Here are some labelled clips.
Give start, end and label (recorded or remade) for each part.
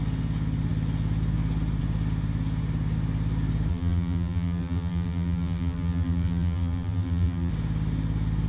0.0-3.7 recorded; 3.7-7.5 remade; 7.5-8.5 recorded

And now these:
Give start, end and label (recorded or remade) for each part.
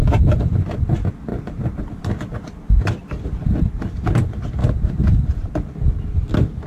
0.0-6.7 recorded